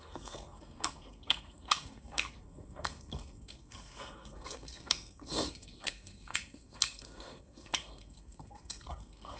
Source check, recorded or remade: remade